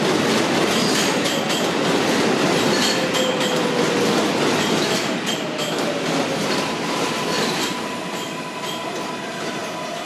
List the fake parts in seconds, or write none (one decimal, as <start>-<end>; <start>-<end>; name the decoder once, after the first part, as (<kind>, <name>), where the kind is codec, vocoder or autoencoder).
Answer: none